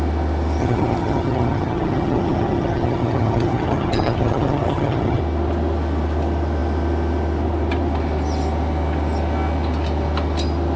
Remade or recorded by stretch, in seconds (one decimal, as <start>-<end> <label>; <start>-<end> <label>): 0.0-0.6 recorded; 0.6-5.2 remade; 5.2-10.8 recorded